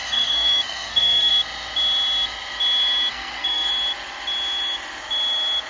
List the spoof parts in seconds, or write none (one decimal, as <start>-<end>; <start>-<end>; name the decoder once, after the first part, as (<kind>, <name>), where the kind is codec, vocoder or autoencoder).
0.0-1.3 (codec, SNAC); 3.1-3.7